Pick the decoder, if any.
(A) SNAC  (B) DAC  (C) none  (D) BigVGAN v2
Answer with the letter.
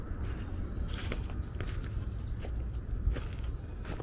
C